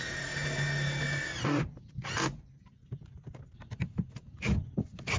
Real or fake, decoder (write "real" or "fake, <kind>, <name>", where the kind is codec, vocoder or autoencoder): real